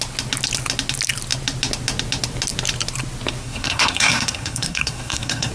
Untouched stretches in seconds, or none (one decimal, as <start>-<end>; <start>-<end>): 0.0-3.4